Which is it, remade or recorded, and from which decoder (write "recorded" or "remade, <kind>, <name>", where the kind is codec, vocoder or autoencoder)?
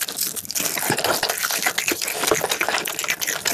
recorded